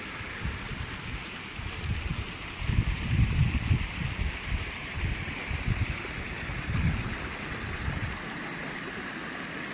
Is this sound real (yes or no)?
yes